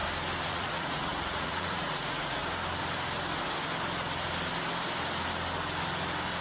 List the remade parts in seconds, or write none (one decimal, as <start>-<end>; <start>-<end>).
0.5-2.4